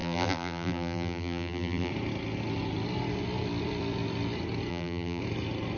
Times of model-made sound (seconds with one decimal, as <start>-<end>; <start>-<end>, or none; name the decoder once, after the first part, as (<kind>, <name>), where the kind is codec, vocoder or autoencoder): 0.0-1.9 (vocoder, BigVGAN v2); 4.7-5.2